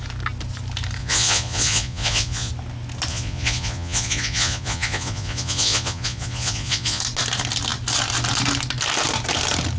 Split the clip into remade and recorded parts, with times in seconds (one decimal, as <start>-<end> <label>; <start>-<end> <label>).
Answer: 0.0-1.0 recorded; 1.0-2.5 remade; 2.5-3.1 recorded; 3.1-7.0 remade; 7.0-9.8 recorded